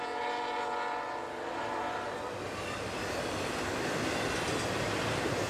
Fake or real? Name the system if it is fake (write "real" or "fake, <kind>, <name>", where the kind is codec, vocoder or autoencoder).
real